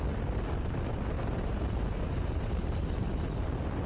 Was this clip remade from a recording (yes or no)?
no